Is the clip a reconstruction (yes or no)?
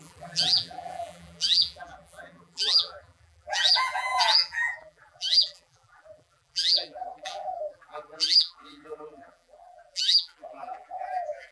yes